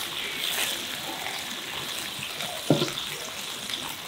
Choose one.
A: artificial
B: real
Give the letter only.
B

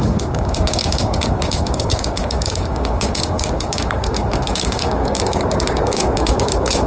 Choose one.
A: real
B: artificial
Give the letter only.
B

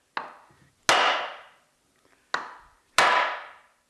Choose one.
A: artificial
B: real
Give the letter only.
B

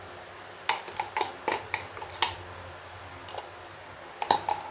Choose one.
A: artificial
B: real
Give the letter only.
B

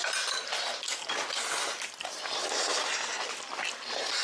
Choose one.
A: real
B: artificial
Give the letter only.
A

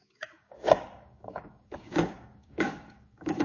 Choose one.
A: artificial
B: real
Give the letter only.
A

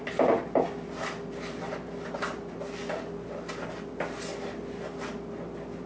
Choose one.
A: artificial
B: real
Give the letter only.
B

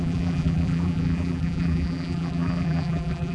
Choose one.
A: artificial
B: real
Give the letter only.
A